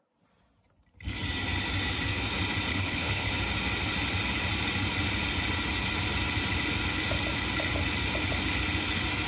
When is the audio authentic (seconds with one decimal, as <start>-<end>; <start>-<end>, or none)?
0.0-2.7; 3.3-9.3